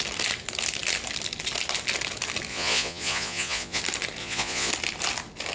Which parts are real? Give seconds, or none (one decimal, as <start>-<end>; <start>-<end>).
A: 0.0-2.5; 3.8-4.2; 4.7-5.5